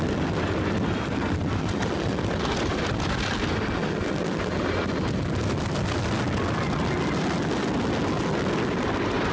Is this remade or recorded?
recorded